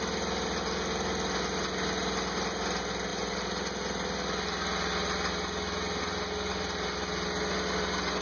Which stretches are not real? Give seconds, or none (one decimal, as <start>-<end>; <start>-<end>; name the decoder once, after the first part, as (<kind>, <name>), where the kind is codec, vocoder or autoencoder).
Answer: none